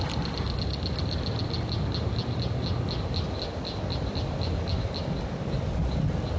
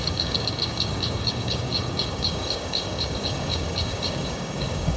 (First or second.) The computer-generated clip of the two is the second